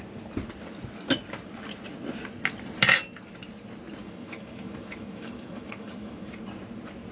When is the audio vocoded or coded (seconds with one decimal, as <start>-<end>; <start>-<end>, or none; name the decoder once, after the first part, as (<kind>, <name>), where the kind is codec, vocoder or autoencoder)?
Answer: 4.0-6.3 (autoencoder, DAC-VAE)